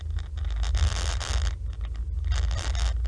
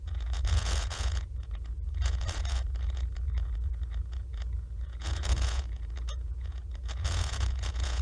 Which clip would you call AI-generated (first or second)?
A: second